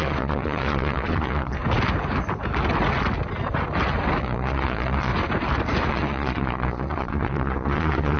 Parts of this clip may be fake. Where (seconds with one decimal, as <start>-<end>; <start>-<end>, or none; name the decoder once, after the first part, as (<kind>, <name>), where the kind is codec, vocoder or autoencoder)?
0.0-1.6 (vocoder, Vocos); 4.2-5.1; 5.9-8.2